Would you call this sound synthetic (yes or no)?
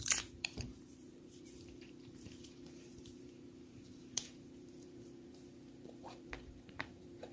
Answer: yes